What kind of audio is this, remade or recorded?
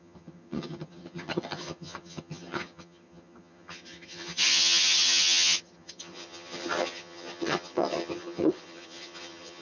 remade